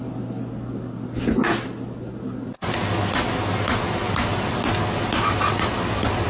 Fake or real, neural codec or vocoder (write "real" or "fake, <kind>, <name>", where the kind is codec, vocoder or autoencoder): real